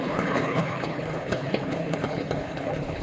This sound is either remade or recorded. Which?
remade